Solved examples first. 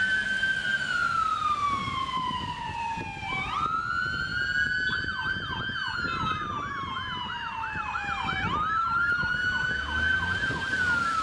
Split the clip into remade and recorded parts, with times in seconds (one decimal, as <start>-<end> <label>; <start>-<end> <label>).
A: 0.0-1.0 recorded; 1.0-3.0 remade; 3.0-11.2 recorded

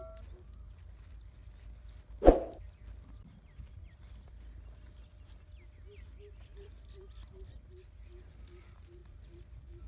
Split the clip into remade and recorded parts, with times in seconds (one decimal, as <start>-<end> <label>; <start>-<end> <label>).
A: 0.0-6.5 recorded; 6.5-7.4 remade; 7.4-9.0 recorded; 9.0-9.9 remade

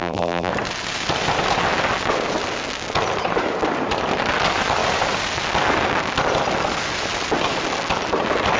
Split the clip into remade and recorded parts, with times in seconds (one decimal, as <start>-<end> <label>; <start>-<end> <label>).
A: 0.0-0.5 remade; 0.5-8.6 recorded

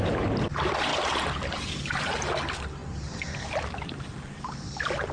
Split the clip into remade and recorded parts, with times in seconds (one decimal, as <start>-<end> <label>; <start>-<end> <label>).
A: 0.0-5.1 recorded

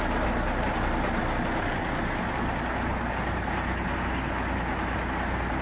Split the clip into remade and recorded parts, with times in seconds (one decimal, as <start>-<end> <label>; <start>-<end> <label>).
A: 0.0-5.6 recorded